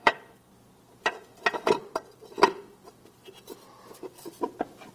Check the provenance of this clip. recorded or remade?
remade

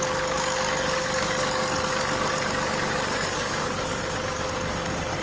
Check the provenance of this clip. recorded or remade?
remade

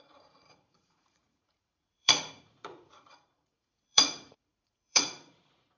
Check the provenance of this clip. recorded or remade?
remade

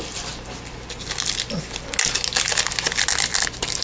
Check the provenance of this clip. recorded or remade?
recorded